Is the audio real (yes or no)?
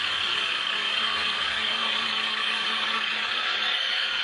no